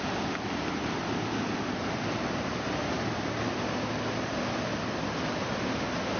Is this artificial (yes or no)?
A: no